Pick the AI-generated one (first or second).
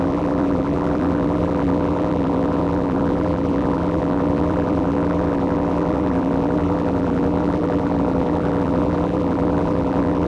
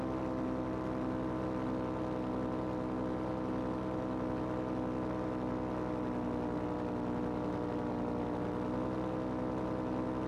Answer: first